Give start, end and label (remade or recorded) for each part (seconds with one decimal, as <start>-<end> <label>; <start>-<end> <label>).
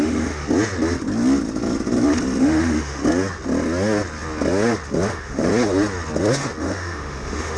0.0-0.4 remade; 0.4-2.4 recorded; 2.4-3.0 remade; 3.0-5.1 recorded; 5.1-5.5 remade; 5.5-6.6 recorded; 6.6-7.6 remade